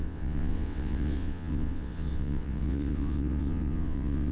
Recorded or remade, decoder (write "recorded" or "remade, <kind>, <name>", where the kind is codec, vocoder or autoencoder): remade, vocoder, WaveNeXt